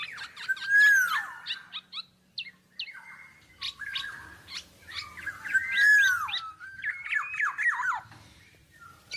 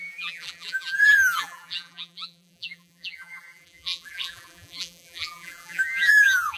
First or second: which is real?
first